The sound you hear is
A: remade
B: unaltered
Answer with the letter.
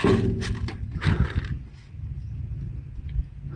B